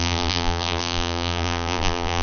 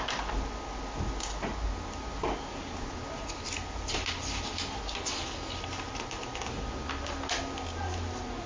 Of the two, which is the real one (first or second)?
second